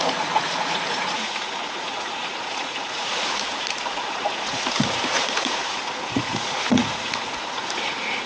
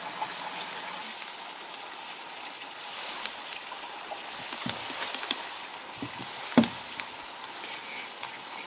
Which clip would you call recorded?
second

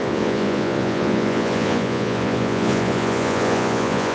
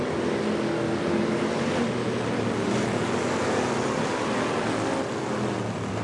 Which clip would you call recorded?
second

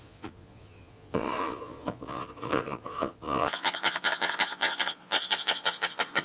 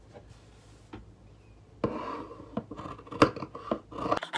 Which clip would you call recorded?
second